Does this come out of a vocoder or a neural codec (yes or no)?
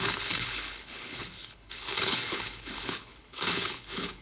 yes